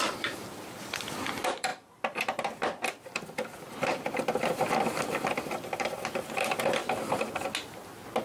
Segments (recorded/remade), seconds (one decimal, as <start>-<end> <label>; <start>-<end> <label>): 0.0-6.8 remade; 6.8-8.2 recorded